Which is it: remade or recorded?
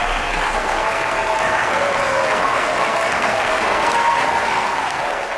remade